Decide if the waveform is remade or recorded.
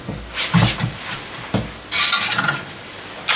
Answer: recorded